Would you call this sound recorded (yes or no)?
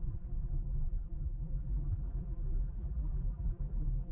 no